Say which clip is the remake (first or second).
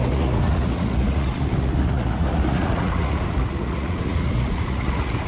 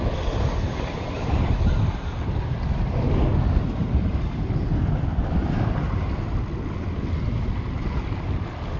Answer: first